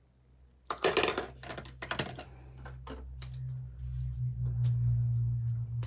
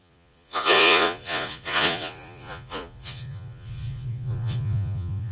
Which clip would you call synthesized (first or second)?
second